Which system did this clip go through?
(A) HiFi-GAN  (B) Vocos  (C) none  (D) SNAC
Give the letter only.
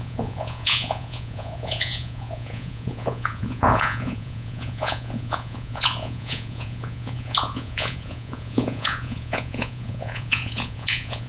B